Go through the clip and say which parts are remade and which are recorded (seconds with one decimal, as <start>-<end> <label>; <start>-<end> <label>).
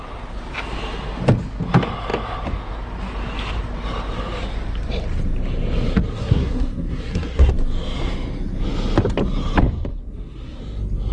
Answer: 0.0-6.1 recorded; 6.1-7.5 remade; 7.5-9.9 recorded; 9.9-10.6 remade; 10.6-11.1 recorded